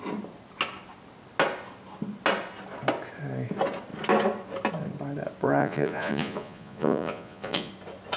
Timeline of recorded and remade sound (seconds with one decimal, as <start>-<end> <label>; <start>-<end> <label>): 0.0-5.6 recorded; 5.6-7.7 remade; 7.7-8.2 recorded